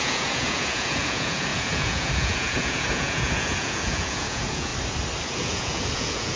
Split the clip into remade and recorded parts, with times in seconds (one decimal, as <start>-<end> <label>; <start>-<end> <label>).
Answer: 0.0-4.7 remade; 4.7-5.3 recorded; 5.3-6.4 remade